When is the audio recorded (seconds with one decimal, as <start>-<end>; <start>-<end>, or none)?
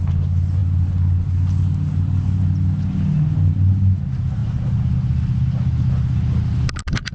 0.0-7.1